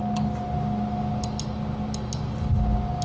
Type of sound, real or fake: real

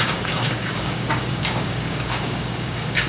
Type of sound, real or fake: fake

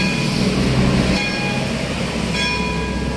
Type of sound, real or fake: real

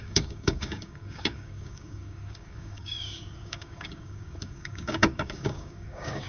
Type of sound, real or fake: fake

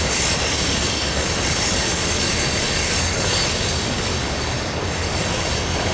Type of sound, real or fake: fake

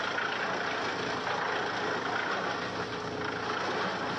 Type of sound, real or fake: real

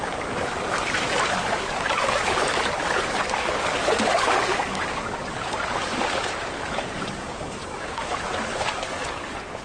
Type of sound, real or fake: fake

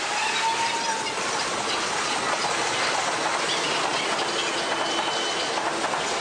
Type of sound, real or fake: real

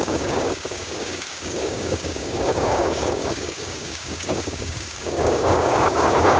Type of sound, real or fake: fake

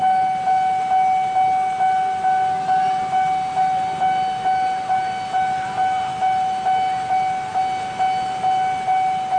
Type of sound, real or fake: real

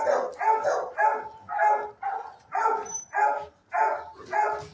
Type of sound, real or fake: real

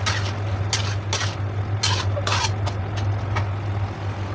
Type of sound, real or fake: real